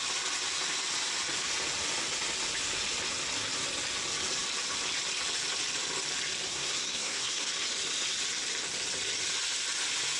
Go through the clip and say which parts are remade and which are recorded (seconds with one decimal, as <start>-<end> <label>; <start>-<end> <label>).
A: 0.0-6.5 recorded; 6.5-7.5 remade; 7.5-10.2 recorded